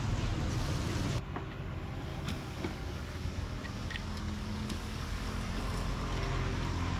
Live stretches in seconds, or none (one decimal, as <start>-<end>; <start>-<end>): 0.0-2.1; 5.6-7.0